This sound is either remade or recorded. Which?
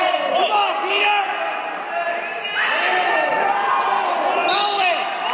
recorded